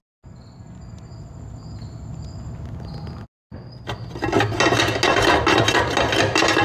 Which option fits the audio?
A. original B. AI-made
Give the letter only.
A